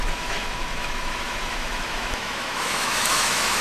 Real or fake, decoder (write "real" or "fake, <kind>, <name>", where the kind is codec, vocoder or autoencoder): fake, autoencoder, DAC-VAE